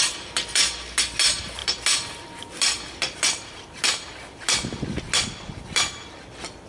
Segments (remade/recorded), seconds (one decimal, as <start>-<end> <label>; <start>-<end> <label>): 0.0-6.7 recorded